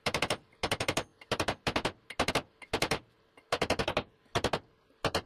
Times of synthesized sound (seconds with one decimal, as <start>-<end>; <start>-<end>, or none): 0.0-5.3